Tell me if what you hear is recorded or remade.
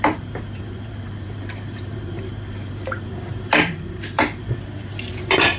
remade